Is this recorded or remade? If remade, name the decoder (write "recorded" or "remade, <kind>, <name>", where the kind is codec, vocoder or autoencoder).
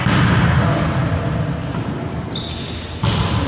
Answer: recorded